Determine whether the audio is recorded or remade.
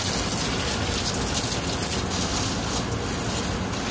recorded